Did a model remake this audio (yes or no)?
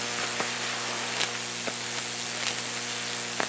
no